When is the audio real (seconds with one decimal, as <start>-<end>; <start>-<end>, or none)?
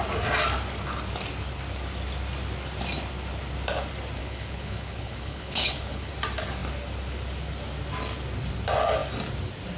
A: 0.0-4.2; 6.1-9.8